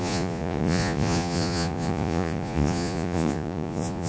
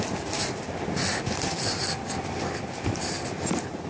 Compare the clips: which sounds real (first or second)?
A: second